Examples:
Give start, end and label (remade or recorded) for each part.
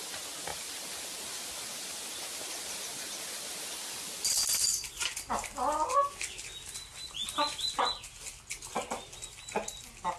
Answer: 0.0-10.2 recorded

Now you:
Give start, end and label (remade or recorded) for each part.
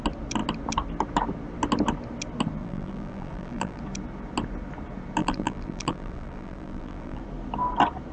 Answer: 0.0-2.6 recorded; 2.6-3.8 remade; 3.8-5.2 recorded; 5.2-7.2 remade; 7.2-8.1 recorded